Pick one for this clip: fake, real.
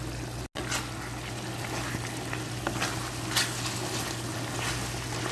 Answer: real